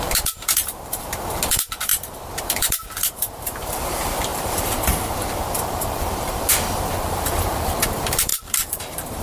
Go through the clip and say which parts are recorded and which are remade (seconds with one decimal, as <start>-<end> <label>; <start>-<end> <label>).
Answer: 0.0-1.9 remade; 1.9-2.4 recorded; 2.4-9.2 remade